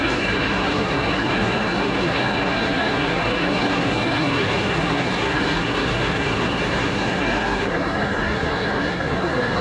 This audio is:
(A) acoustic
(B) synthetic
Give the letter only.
B